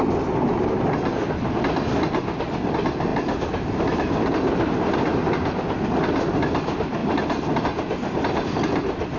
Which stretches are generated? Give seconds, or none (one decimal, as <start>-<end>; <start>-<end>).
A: none